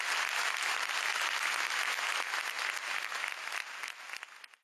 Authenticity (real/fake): real